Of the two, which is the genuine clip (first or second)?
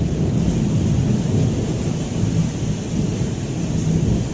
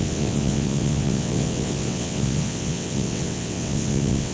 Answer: first